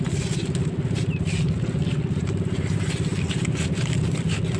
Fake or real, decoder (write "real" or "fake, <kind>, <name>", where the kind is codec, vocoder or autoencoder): real